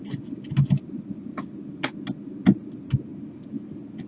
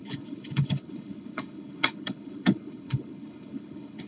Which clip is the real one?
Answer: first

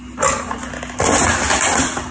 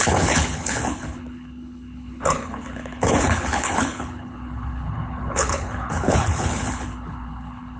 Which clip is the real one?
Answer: first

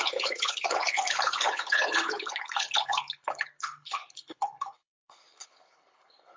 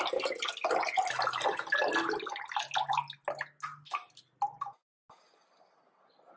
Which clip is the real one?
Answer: second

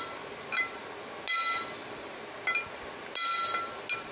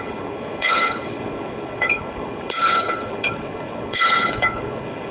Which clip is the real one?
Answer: first